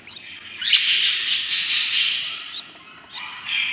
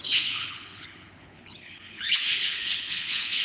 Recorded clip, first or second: first